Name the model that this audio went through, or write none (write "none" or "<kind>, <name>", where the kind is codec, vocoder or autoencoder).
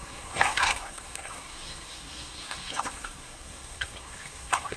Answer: codec, SNAC